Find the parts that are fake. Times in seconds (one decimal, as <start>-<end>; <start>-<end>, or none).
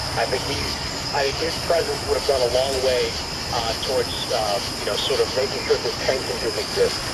0.0-1.5; 5.8-7.1